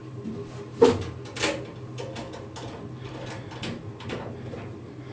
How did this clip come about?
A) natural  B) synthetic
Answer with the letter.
A